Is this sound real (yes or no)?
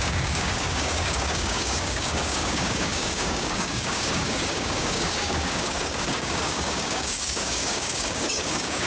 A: no